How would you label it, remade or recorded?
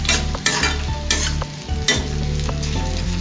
recorded